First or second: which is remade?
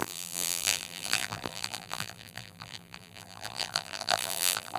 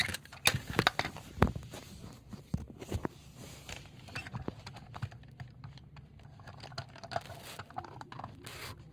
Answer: first